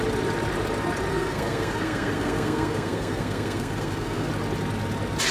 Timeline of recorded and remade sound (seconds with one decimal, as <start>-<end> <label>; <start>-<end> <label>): 0.0-1.1 recorded; 1.1-4.3 remade; 4.3-5.3 recorded

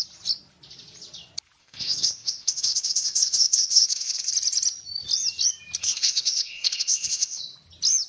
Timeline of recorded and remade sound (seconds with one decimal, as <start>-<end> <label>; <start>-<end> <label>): 0.0-1.6 recorded; 1.6-4.3 remade; 4.3-5.8 recorded; 5.8-7.4 remade; 7.4-8.1 recorded

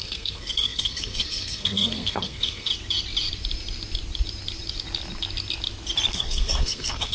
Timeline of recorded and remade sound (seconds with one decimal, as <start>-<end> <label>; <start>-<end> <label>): 0.0-2.7 remade; 2.7-6.1 recorded; 6.1-7.1 remade

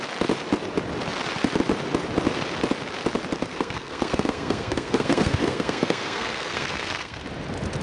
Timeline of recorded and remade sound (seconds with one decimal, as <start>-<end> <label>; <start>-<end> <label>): 0.0-3.5 recorded; 3.5-7.2 remade; 7.2-7.8 recorded